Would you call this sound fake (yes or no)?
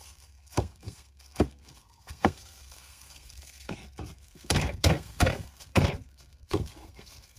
yes